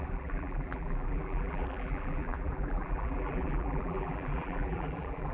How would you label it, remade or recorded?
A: remade